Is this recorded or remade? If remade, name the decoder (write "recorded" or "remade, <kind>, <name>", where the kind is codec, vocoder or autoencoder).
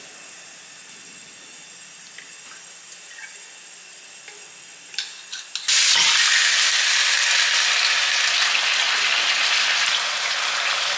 recorded